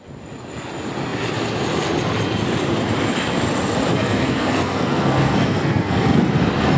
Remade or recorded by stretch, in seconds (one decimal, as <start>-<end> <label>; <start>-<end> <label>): 0.0-3.9 recorded; 3.9-6.3 remade; 6.3-6.8 recorded

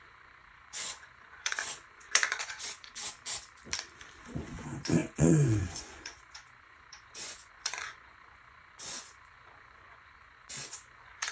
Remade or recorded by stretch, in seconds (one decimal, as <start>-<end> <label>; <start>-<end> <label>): 0.0-3.0 remade; 3.0-4.2 recorded; 4.2-11.3 remade

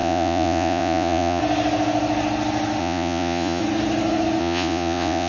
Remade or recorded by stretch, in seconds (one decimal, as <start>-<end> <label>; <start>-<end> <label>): 0.0-1.4 remade; 1.4-2.8 recorded; 2.8-3.6 remade; 3.6-4.4 recorded; 4.4-5.3 remade

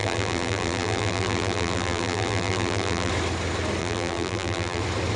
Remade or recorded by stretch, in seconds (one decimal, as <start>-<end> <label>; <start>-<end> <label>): 0.0-3.1 remade; 3.1-3.8 recorded; 3.8-4.8 remade; 4.8-5.2 recorded

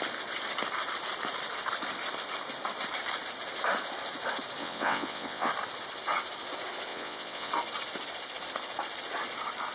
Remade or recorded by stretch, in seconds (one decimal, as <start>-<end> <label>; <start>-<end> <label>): 0.0-4.6 recorded; 4.6-5.5 remade; 5.5-6.9 recorded; 6.9-7.5 remade; 7.5-9.7 recorded